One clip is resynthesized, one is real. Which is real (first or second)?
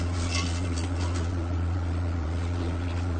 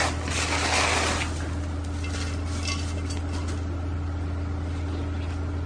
second